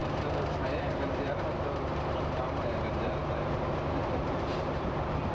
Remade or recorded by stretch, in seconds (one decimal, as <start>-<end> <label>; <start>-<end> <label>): 0.0-5.3 remade